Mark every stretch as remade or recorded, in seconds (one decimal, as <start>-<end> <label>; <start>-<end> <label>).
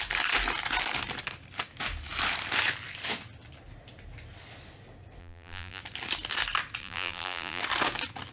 0.0-5.2 recorded; 5.2-5.8 remade; 5.8-6.8 recorded; 6.8-7.6 remade; 7.6-8.3 recorded